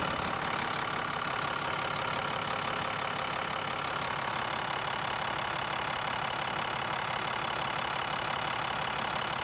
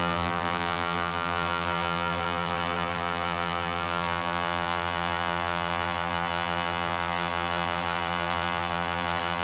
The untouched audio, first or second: first